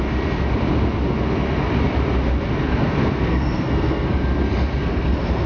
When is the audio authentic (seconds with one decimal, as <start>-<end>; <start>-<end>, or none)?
0.0-2.7; 4.2-4.8